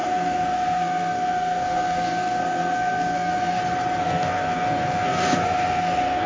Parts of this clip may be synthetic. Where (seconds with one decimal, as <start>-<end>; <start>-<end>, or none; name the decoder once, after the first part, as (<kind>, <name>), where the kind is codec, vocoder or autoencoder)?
0.0-3.6 (codec, SNAC); 4.0-6.3